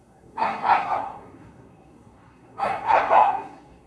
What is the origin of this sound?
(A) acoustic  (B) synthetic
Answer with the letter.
B